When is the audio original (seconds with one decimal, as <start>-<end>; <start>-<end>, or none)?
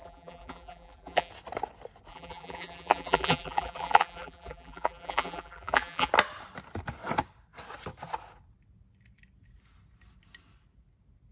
1.3-2.1; 6.1-11.3